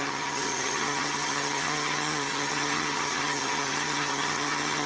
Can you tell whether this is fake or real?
fake